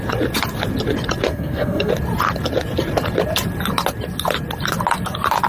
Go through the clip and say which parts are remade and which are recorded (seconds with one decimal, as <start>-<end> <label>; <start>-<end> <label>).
0.0-1.3 recorded; 1.3-1.9 remade; 1.9-5.5 recorded